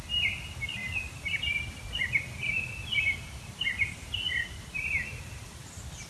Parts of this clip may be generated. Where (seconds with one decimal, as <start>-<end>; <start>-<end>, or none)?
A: none